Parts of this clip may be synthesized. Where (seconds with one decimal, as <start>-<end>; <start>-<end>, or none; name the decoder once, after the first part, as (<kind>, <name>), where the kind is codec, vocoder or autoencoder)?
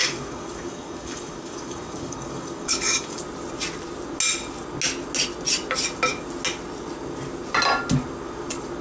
0.0-3.2 (codec, DAC)